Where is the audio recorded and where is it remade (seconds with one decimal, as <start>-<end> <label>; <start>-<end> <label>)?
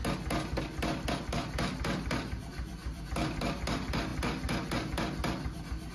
0.0-5.9 recorded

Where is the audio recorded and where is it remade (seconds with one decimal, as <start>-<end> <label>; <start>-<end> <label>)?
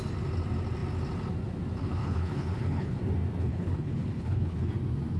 0.0-1.8 recorded; 1.8-3.0 remade; 3.0-3.4 recorded; 3.4-4.7 remade; 4.7-5.2 recorded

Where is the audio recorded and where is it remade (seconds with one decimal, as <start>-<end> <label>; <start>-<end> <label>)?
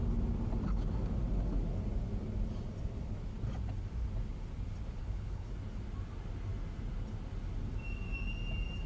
0.0-5.0 recorded; 5.0-5.5 remade; 5.5-8.9 recorded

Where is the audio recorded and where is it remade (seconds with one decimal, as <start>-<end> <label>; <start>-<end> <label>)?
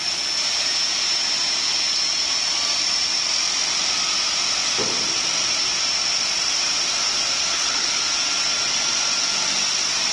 0.0-7.5 recorded; 7.5-8.0 remade; 8.0-10.1 recorded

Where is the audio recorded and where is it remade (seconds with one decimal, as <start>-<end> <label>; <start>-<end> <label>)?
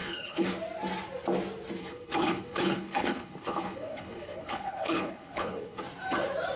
0.0-0.5 remade; 0.5-1.8 recorded; 1.8-5.8 remade; 5.8-6.6 recorded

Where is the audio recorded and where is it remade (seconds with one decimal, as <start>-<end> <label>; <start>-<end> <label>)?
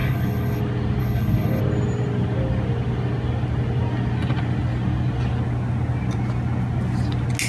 0.0-0.6 remade; 0.6-1.0 recorded; 1.0-1.6 remade; 1.6-7.5 recorded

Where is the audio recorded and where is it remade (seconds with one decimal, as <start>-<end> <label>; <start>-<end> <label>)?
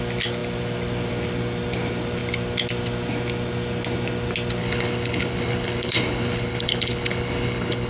0.0-4.6 recorded; 4.6-7.9 remade